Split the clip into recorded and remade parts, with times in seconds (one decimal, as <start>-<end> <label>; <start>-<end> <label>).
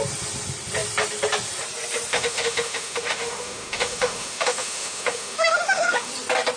0.0-2.1 recorded; 2.1-6.1 remade; 6.1-6.6 recorded